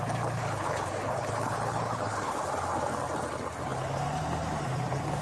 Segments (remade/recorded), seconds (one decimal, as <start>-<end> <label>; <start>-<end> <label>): 0.0-0.4 recorded; 0.4-2.5 remade; 2.5-5.2 recorded

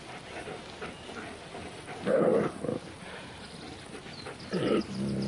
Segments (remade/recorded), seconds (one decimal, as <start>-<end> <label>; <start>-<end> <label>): 0.0-5.3 recorded